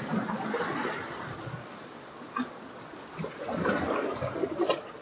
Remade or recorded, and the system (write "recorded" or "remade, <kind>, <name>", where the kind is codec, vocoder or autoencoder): recorded